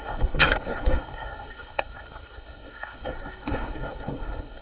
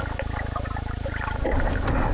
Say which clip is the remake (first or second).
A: first